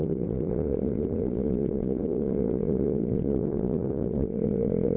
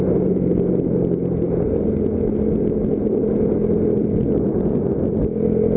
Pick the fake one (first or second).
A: first